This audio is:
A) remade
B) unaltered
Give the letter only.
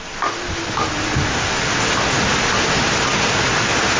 B